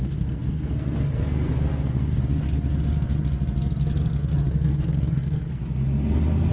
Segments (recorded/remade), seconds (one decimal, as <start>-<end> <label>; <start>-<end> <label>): 0.0-2.2 remade; 2.2-4.5 recorded; 4.5-5.6 remade; 5.6-6.5 recorded